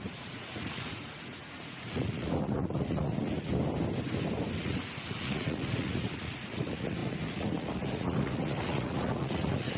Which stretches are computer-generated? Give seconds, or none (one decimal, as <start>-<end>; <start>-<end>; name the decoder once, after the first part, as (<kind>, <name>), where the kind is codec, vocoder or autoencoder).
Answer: 0.0-3.5 (vocoder, Vocos); 4.6-9.8